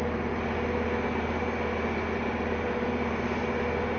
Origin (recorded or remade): recorded